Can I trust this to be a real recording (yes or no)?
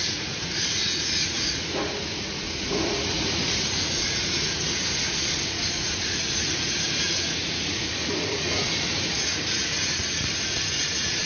no